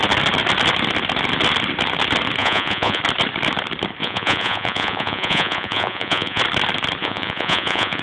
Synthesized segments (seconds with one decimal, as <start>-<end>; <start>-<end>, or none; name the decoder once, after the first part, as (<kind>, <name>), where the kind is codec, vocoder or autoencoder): 2.4-3.0 (vocoder, Vocos); 4.0-6.4; 7.0-8.0